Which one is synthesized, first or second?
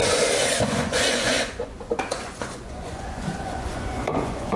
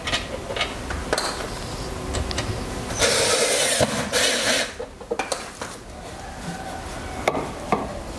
first